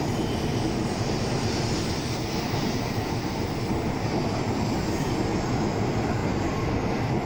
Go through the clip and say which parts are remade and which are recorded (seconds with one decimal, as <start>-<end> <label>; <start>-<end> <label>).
0.0-7.3 recorded